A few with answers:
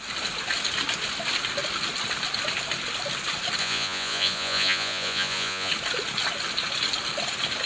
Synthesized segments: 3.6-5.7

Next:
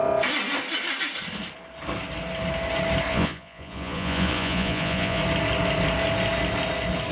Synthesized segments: 3.1-5.2

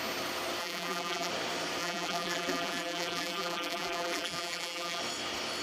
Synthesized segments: 0.6-1.3; 1.8-5.0

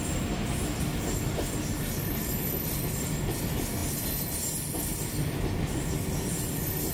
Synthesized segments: none

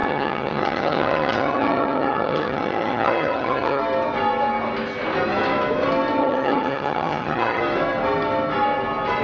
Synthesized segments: 0.0-3.8; 6.2-7.6

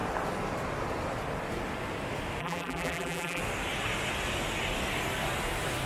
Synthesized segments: 2.4-3.4